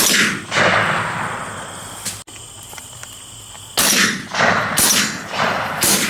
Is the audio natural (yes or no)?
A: yes